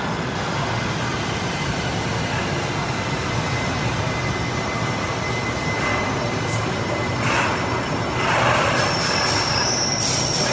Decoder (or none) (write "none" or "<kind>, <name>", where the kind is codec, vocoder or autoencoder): none